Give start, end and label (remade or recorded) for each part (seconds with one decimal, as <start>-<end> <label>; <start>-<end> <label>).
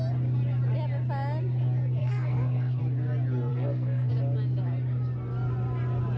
0.0-2.0 recorded; 2.0-2.8 remade; 2.8-3.5 recorded; 3.5-4.1 remade; 4.1-6.2 recorded